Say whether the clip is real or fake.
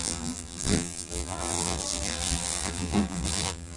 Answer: fake